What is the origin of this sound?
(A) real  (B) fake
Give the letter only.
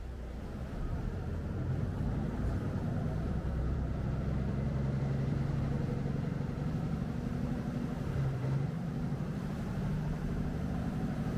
B